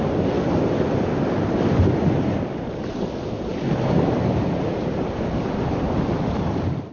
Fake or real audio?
real